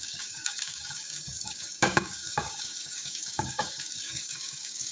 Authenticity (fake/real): fake